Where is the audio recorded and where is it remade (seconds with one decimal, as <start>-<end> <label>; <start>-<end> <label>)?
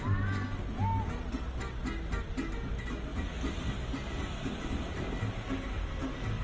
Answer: 0.0-6.4 recorded